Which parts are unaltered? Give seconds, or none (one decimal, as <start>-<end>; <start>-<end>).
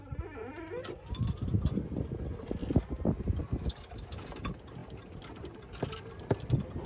0.0-6.9